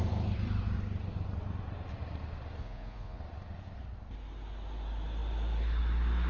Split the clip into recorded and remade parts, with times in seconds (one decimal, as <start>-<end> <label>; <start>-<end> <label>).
0.0-2.6 recorded; 2.6-3.2 remade; 3.2-6.3 recorded